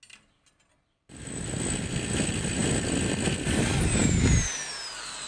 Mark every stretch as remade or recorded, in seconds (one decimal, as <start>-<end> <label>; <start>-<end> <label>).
0.0-5.3 recorded